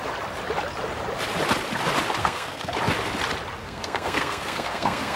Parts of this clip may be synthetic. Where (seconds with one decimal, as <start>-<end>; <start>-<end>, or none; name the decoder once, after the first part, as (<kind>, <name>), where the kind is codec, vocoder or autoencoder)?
2.2-2.7 (codec, SNAC); 3.6-5.2